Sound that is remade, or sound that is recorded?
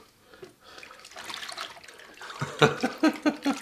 recorded